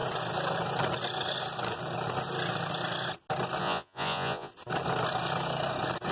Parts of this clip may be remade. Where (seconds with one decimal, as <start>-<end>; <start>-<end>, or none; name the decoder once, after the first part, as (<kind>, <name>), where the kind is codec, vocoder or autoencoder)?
3.6-4.5 (vocoder, Vocos)